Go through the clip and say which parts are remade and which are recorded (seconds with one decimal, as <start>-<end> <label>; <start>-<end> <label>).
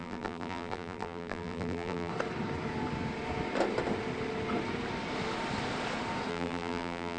0.0-2.1 remade; 2.1-6.3 recorded; 6.3-7.2 remade